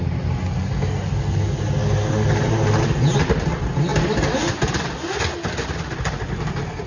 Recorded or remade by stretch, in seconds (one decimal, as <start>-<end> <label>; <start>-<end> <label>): 0.0-6.9 recorded

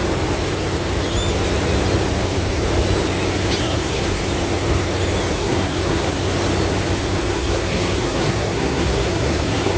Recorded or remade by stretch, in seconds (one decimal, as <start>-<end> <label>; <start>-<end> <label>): 0.0-3.6 recorded; 3.6-4.2 remade; 4.2-5.3 recorded; 5.3-6.2 remade; 6.2-7.2 recorded; 7.2-9.8 remade

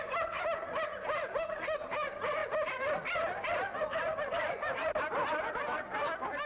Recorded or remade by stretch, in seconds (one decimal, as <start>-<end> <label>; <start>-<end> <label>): 0.0-2.4 recorded; 2.4-6.5 remade

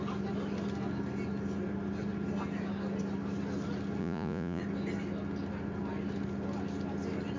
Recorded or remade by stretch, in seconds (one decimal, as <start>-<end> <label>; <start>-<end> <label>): 0.0-4.0 recorded; 4.0-4.6 remade; 4.6-7.4 recorded

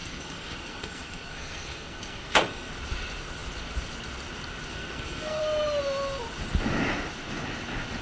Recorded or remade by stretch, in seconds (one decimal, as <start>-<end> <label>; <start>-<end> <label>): 0.0-2.7 remade; 2.7-4.7 recorded; 4.7-5.4 remade; 5.4-8.0 recorded

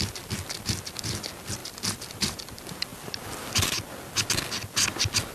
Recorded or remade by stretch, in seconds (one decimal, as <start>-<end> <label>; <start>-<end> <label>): 0.0-1.6 recorded; 1.6-2.4 remade; 2.4-2.9 recorded; 2.9-3.8 remade; 3.8-5.3 recorded

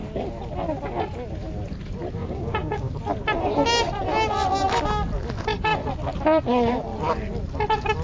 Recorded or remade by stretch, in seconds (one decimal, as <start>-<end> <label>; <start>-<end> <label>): 0.0-2.2 recorded; 2.2-2.9 remade; 2.9-8.0 recorded